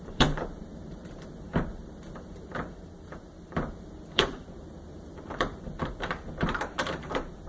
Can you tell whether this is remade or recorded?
remade